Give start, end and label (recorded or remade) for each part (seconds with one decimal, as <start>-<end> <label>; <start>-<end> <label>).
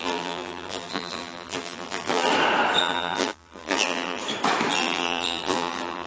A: 0.0-2.3 remade; 2.3-2.8 recorded; 2.8-4.2 remade; 4.2-4.7 recorded; 4.7-6.1 remade